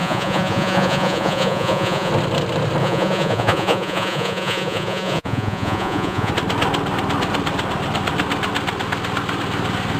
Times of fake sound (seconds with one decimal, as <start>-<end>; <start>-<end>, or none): 0.0-2.1; 2.8-6.3